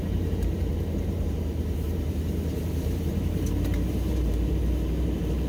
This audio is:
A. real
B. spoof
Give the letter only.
B